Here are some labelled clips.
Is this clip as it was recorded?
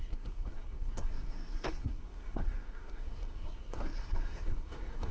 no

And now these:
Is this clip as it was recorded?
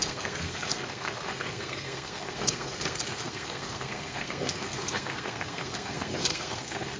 no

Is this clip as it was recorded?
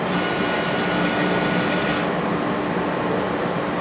yes